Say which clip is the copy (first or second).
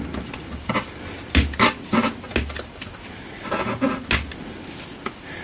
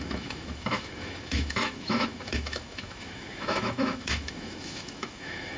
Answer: second